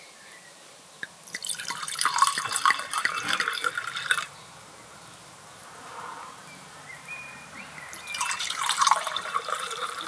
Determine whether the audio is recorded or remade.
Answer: remade